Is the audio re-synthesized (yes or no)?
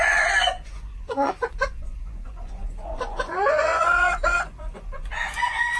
yes